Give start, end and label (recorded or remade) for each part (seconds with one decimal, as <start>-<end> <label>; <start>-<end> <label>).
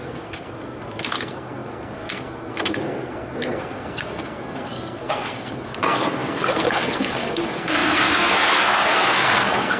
0.0-9.8 remade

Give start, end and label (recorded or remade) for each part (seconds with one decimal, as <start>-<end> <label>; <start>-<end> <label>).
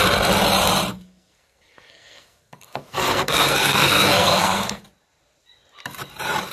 0.0-0.9 recorded; 0.9-4.8 remade; 4.8-6.5 recorded